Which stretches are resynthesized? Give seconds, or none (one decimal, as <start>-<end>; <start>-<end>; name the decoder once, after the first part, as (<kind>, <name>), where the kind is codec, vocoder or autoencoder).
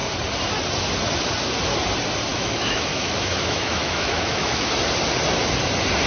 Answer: 2.3-4.7 (autoencoder, DAC-VAE)